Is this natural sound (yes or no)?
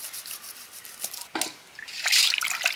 yes